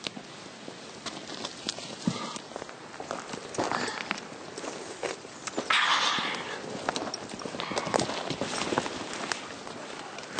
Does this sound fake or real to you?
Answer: real